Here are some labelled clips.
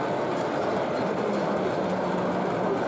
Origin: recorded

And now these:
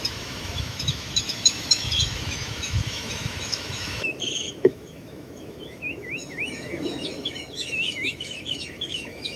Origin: remade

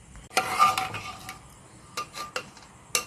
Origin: recorded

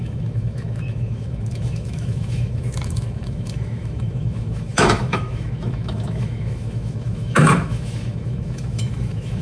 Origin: remade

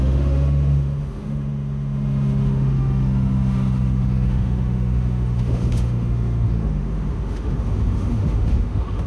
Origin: remade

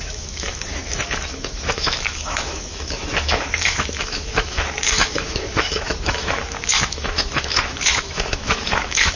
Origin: remade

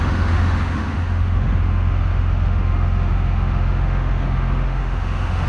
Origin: remade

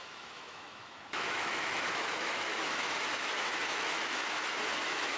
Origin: remade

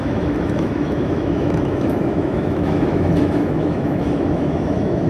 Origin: remade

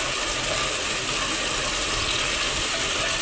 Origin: recorded